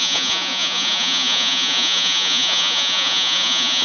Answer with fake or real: fake